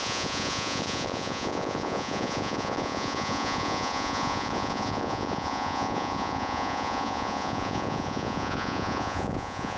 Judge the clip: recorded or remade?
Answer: remade